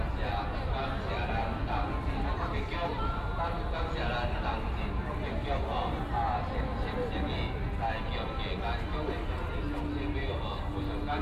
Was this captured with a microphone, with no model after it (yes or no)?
yes